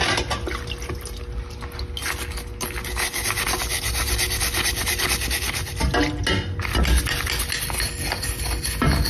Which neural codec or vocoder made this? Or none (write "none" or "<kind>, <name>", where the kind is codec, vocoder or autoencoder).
none